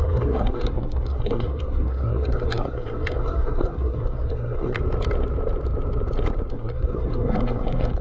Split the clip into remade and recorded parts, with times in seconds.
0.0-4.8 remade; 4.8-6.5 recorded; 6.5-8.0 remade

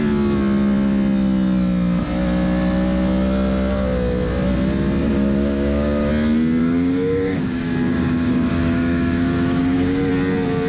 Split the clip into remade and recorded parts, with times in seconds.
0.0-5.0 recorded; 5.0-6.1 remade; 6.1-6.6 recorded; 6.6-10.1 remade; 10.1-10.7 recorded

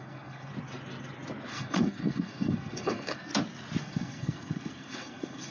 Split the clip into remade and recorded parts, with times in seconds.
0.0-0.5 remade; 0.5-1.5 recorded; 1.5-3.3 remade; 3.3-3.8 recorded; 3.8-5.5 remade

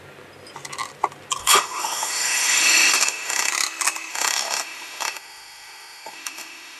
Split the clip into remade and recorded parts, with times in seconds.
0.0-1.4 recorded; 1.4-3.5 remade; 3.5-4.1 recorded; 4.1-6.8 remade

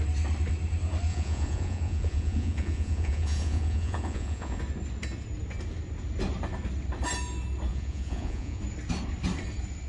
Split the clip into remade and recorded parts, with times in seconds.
0.0-1.1 recorded; 1.1-4.6 remade; 4.6-7.7 recorded; 7.7-8.6 remade; 8.6-9.9 recorded

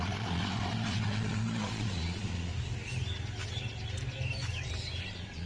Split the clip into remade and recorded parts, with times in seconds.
0.0-2.5 remade; 2.5-5.0 recorded; 5.0-5.5 remade